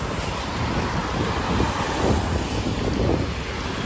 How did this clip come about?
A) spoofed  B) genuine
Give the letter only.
B